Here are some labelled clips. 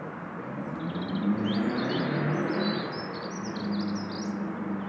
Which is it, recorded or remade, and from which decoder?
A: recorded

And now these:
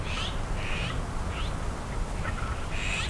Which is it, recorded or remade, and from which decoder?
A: recorded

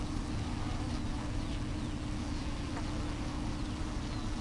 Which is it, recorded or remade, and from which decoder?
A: recorded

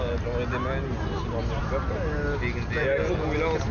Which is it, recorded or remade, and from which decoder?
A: recorded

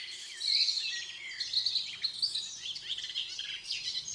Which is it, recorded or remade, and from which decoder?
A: recorded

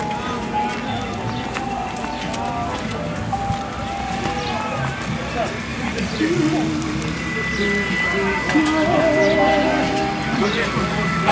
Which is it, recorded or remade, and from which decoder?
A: recorded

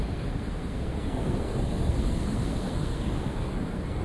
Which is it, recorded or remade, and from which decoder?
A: remade, codec, SNAC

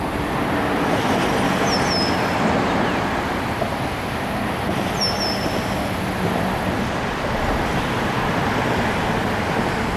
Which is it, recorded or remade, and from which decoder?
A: recorded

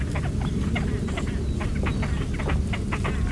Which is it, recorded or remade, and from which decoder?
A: recorded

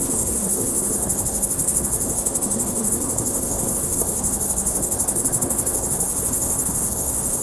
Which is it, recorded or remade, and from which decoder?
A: remade, codec, SNAC